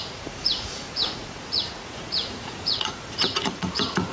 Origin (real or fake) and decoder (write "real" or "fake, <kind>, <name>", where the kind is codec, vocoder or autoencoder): fake, vocoder, Vocos